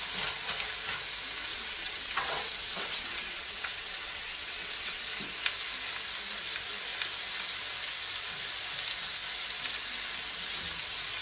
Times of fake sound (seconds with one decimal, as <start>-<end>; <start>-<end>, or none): 1.5-5.0